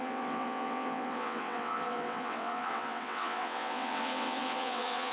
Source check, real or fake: fake